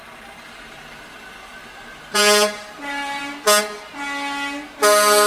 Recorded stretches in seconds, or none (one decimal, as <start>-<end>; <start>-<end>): 3.2-5.3